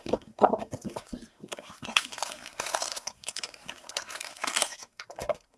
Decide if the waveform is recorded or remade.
remade